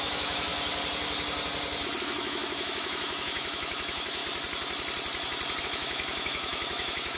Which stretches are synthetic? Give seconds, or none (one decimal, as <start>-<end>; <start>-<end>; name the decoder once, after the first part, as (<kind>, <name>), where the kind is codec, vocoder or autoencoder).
0.0-0.5 (autoencoder, DAC-VAE); 2.0-4.2; 5.6-7.2